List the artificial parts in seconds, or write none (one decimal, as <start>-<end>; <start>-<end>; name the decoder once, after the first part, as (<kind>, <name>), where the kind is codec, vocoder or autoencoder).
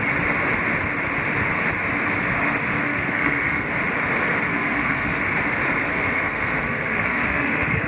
2.8-3.7 (codec, SNAC); 4.5-5.2; 5.9-7.9